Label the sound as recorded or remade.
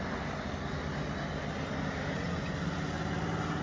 recorded